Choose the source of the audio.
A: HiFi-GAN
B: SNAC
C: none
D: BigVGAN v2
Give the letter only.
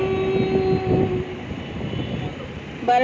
C